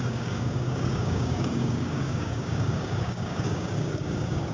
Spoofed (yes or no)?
yes